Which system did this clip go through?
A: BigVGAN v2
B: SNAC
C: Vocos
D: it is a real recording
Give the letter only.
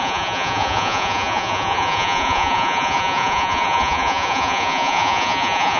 C